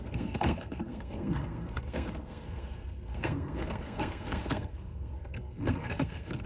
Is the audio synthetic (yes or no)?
yes